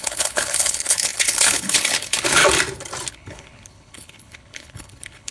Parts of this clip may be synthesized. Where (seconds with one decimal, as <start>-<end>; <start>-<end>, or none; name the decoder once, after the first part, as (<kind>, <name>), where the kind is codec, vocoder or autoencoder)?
0.0-2.4 (codec, HILCodec); 3.1-5.3